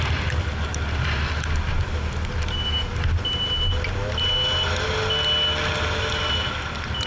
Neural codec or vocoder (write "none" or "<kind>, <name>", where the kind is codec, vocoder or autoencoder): none